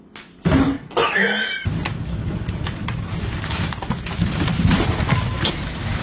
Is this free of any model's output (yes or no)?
yes